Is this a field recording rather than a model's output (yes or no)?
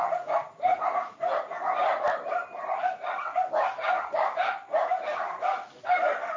yes